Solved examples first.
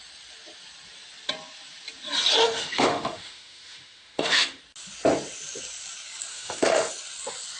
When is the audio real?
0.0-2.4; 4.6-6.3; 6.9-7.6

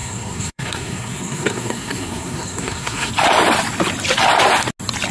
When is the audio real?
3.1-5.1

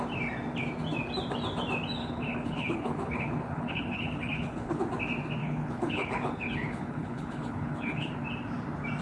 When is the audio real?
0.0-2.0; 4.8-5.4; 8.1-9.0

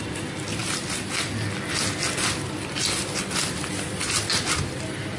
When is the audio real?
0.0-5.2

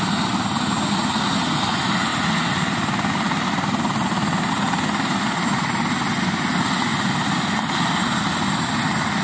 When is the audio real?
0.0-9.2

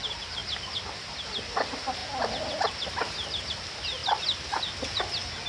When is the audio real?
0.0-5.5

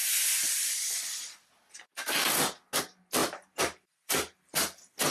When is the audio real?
0.0-3.2; 4.4-5.1